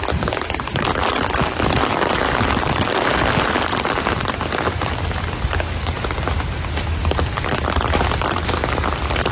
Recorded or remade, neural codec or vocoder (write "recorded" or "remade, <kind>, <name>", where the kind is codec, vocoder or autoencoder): recorded